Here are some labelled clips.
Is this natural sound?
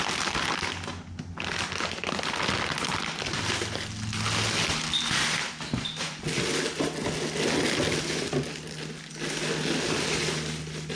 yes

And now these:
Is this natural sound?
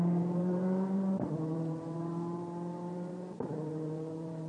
no